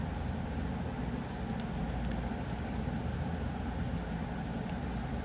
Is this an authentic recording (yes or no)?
yes